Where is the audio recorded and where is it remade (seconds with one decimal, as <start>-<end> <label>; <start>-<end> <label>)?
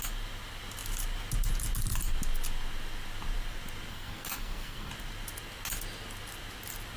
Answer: 0.0-3.9 recorded; 3.9-4.9 remade; 4.9-7.0 recorded